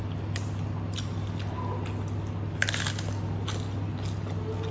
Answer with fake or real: real